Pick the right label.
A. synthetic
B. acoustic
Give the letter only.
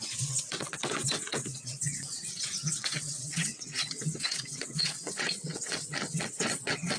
A